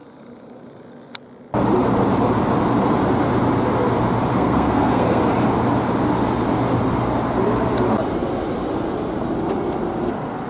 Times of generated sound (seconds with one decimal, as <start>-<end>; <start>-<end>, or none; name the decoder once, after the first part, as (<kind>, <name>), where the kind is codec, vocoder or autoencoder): 4.3-5.2 (codec, SNAC)